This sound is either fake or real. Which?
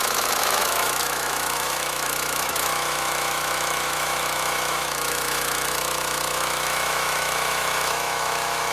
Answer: fake